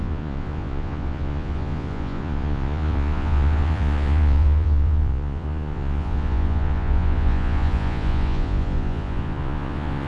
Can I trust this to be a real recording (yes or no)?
no